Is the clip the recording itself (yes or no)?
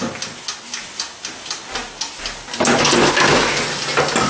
yes